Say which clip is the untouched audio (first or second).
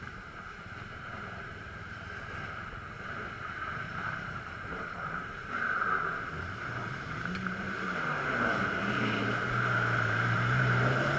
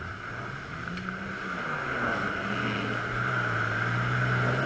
second